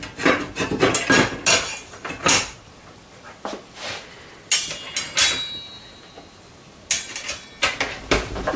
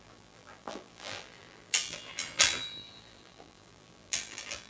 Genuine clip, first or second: first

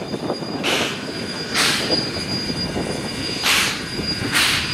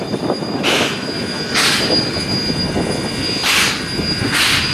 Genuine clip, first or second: second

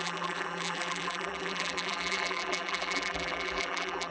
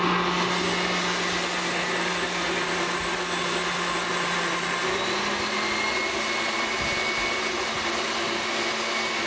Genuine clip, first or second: second